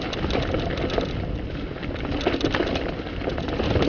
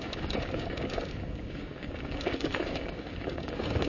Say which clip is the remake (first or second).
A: second